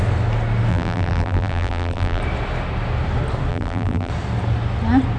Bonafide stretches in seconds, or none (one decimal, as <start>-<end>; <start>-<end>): 0.0-0.7; 2.2-3.5; 4.1-5.2